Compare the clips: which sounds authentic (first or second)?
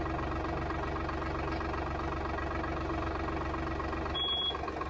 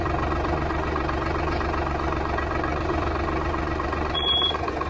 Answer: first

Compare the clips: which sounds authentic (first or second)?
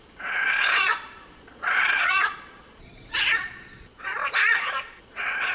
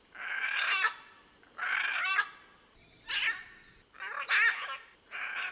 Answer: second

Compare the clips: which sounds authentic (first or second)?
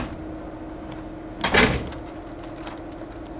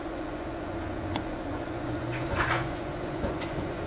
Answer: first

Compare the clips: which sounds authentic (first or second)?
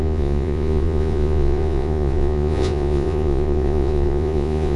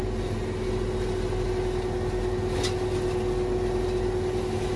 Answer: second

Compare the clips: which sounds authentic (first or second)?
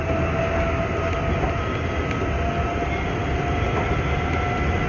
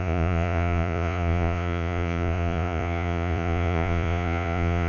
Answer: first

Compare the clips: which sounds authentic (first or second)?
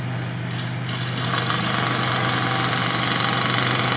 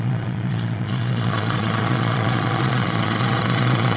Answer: first